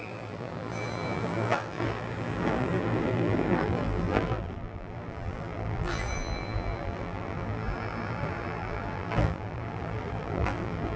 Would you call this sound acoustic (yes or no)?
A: no